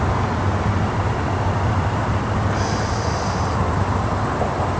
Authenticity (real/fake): real